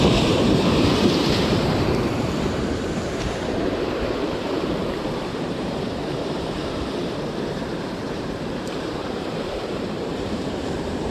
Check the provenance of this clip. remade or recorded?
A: remade